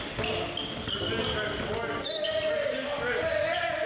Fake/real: real